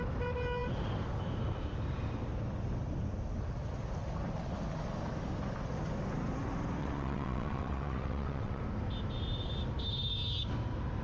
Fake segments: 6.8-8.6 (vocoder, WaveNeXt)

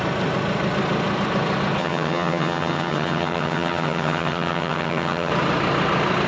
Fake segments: 1.8-5.3 (vocoder, HiFi-GAN)